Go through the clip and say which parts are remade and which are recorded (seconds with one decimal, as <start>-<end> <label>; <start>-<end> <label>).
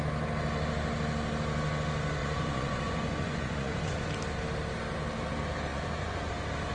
0.0-2.2 recorded; 2.2-4.1 remade; 4.1-5.7 recorded; 5.7-6.3 remade; 6.3-6.7 recorded